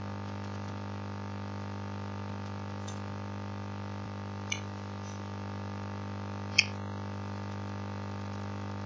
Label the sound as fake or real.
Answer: real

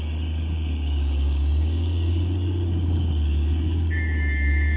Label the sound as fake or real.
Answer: fake